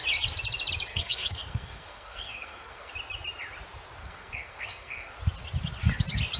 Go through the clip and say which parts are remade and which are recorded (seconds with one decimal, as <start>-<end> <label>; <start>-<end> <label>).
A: 0.0-0.9 recorded; 0.9-2.9 remade; 2.9-4.0 recorded; 4.0-5.1 remade; 5.1-6.4 recorded